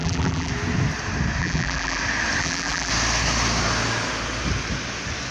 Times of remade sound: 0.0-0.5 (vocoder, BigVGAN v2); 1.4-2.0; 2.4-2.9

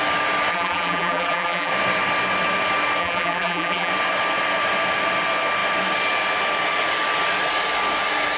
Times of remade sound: 0.5-1.7 (vocoder, BigVGAN v2); 3.0-3.9